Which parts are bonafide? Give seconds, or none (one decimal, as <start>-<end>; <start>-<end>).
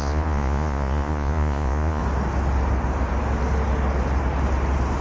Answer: 2.0-5.0